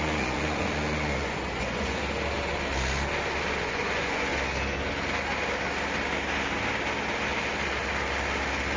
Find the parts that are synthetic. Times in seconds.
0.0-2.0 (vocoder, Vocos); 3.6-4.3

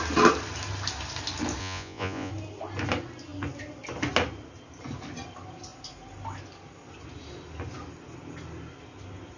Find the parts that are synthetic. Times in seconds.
1.6-2.3 (vocoder, Vocos)

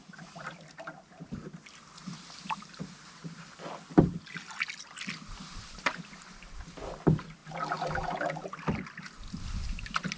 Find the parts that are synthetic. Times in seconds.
none

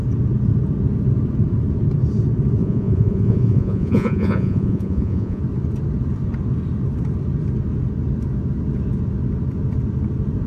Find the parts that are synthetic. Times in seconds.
2.6-5.4 (vocoder, Vocos)

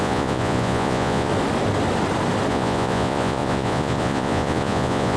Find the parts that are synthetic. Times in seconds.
0.0-1.3 (vocoder, Vocos); 2.5-5.2

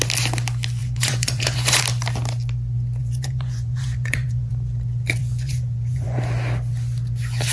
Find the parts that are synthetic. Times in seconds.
0.8-1.8 (vocoder, Vocos); 3.0-4.5; 5.2-6.2